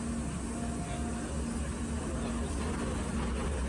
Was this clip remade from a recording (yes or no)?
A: no